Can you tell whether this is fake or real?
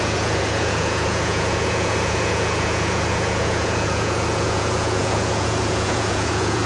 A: fake